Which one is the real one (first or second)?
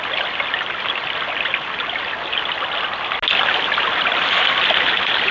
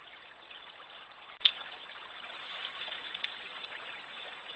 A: first